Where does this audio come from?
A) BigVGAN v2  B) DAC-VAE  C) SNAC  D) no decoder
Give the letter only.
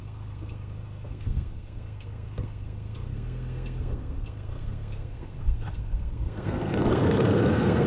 C